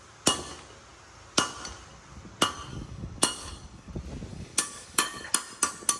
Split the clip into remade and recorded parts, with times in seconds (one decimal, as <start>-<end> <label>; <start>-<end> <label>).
0.0-2.7 recorded; 2.7-3.9 remade; 3.9-4.3 recorded; 4.3-5.3 remade; 5.3-6.0 recorded